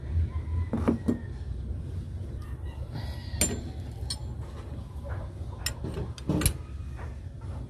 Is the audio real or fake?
real